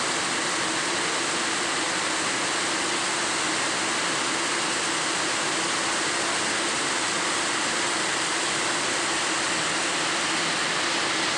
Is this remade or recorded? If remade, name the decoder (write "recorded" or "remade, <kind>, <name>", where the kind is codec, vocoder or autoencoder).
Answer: recorded